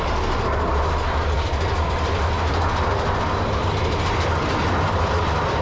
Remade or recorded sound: recorded